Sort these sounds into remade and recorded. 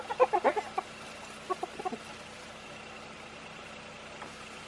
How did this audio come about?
recorded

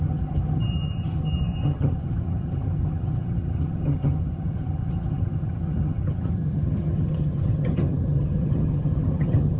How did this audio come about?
remade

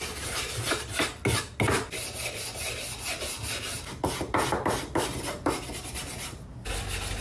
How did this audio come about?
recorded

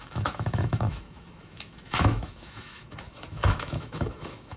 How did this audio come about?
remade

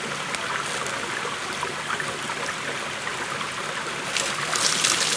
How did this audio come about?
recorded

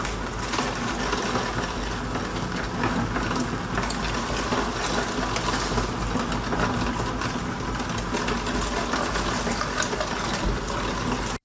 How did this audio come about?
recorded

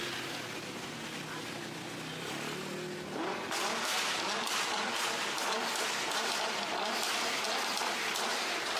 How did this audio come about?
recorded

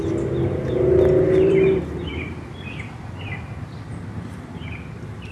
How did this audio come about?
remade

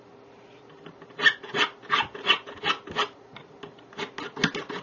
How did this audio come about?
recorded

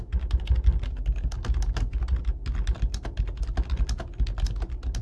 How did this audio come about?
recorded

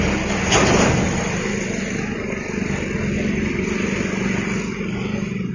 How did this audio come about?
recorded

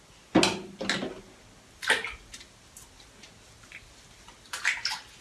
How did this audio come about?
recorded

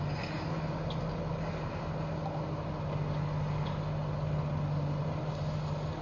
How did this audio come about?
recorded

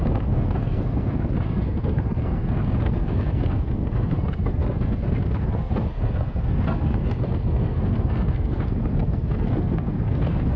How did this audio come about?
remade